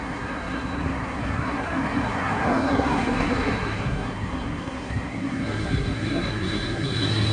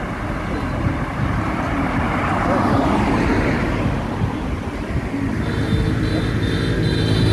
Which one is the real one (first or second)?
second